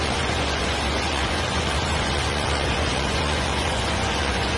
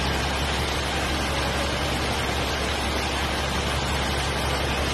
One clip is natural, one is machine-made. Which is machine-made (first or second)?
first